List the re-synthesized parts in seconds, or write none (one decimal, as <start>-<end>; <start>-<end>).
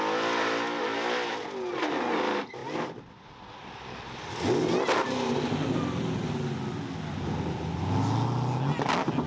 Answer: none